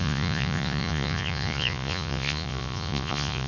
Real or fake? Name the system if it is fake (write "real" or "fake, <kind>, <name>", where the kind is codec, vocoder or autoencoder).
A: fake, vocoder, Vocos